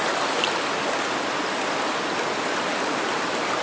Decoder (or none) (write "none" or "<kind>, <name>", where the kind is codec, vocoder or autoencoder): none